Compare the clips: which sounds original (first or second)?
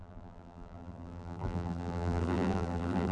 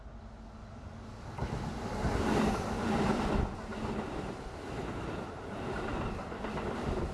second